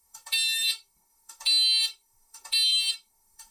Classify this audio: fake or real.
fake